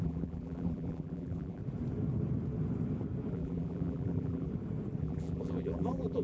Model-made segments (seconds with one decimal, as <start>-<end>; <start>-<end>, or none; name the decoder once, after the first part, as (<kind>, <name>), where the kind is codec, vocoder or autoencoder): 0.0-1.6 (vocoder, BigVGAN v2); 3.3-4.5; 5.0-6.2